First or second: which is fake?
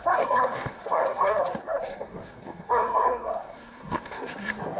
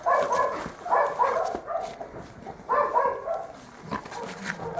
first